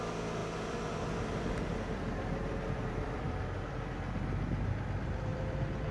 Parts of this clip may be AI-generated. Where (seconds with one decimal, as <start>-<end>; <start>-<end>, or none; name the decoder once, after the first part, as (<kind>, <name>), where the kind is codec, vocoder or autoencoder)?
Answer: 0.4-3.9 (vocoder, BigVGAN v2); 5.3-5.9